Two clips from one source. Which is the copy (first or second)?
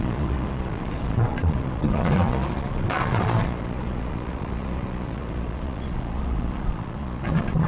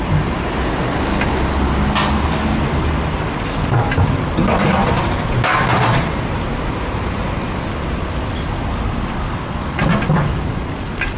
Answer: first